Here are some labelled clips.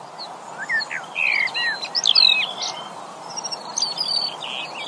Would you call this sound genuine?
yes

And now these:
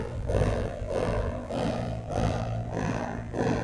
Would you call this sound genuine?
no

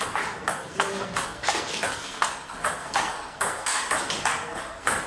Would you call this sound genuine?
no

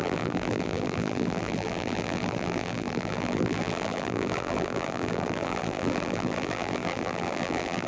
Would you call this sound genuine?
no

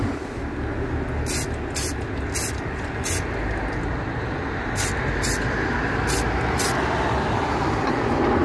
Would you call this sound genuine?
yes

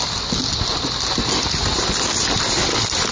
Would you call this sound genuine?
yes